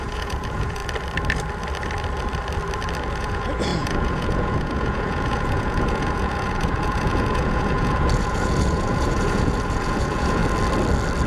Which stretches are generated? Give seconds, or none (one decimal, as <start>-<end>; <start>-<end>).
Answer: 0.0-0.8; 3.2-10.4